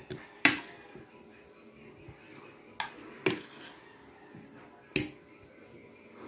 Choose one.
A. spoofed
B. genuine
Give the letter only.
B